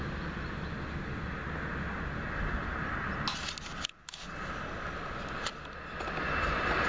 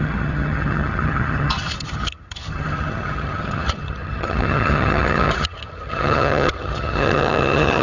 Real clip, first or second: first